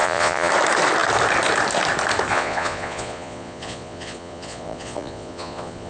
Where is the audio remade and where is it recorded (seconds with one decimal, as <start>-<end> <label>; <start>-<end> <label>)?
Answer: 0.0-0.5 remade; 0.5-2.3 recorded; 2.3-5.9 remade